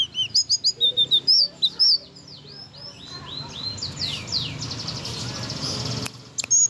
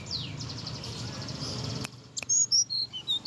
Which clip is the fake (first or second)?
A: second